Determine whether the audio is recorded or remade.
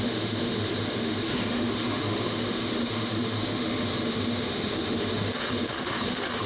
remade